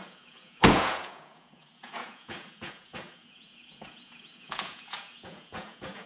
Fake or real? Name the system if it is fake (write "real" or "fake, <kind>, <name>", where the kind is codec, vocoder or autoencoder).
fake, vocoder, Vocos